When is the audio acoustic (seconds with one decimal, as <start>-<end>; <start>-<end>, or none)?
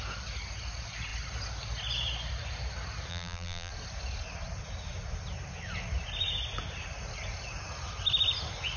0.0-3.1; 3.7-8.8